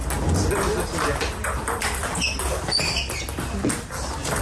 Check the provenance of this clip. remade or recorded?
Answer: recorded